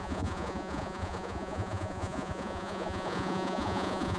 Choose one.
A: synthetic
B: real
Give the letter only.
A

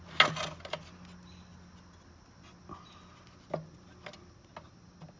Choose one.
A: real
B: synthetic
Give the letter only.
A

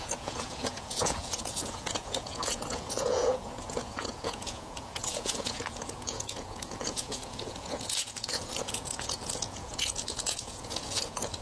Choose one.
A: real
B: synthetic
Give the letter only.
B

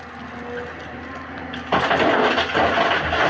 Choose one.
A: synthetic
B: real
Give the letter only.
B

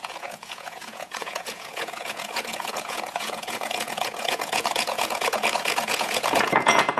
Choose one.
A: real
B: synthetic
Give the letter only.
B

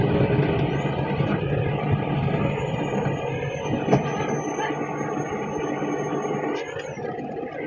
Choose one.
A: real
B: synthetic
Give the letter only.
A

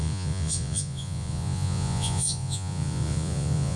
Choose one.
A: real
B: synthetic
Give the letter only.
B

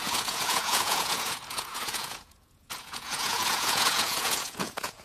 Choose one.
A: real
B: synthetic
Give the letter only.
B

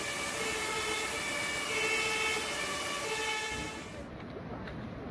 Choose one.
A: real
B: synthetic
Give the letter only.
A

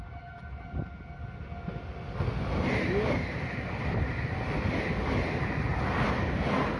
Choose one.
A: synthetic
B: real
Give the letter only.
B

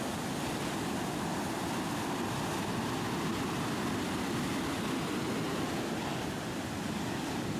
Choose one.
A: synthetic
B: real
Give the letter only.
B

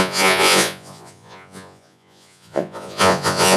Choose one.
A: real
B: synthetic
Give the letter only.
B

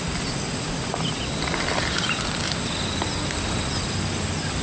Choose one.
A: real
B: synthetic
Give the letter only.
A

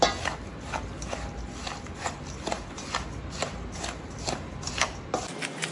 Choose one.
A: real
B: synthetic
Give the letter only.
A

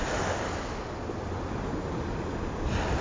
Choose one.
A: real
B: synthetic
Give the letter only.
A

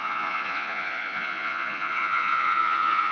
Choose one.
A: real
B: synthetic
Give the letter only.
B